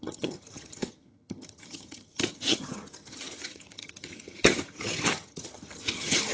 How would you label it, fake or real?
fake